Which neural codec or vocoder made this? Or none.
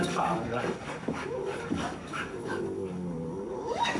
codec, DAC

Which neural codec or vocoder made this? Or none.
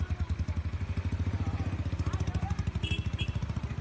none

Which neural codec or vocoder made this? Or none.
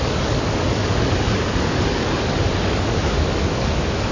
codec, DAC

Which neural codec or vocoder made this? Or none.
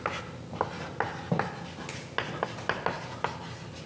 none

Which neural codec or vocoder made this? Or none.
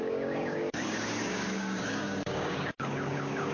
codec, DAC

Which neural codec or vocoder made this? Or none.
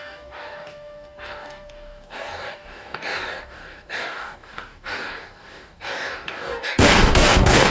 codec, DAC